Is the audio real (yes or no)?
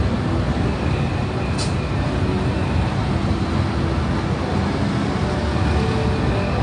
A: yes